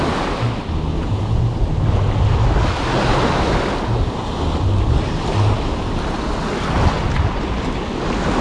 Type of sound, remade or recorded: recorded